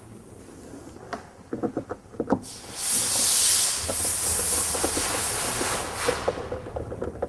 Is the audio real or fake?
real